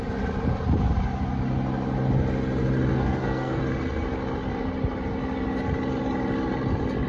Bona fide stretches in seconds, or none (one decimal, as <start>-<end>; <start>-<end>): 0.0-2.9; 3.6-7.1